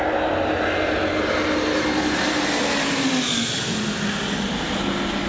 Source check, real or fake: real